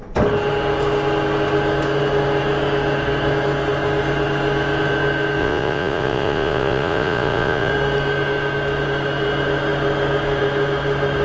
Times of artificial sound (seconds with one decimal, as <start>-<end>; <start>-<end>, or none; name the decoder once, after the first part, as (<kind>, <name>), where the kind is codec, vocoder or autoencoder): 5.4-7.7 (vocoder, Vocos)